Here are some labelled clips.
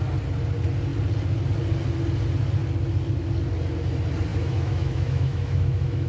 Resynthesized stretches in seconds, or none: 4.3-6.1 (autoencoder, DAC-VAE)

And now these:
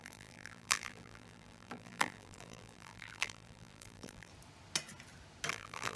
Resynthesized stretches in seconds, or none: 0.0-4.3 (vocoder, BigVGAN v2); 5.5-6.0

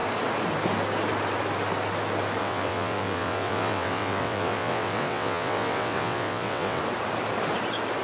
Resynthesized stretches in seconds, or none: 2.4-6.8 (vocoder, WaveNeXt)

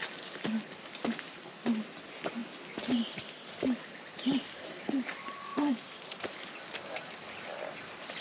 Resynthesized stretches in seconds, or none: 5.5-6.5 (vocoder, BigVGAN v2)

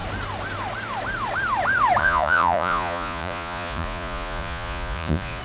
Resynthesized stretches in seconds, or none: 2.0-5.4 (vocoder, Vocos)

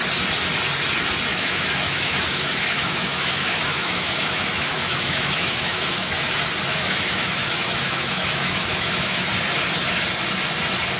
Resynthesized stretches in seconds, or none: 1.3-6.3 (autoencoder, DAC-VAE); 6.7-9.3

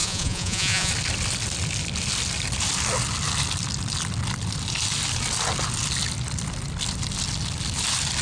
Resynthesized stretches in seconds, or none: 0.0-0.9 (vocoder, Vocos)